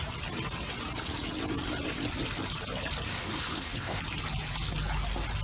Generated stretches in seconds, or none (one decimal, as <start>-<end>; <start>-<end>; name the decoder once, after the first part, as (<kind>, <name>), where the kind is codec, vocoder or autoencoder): 3.1-4.0 (autoencoder, DAC-VAE)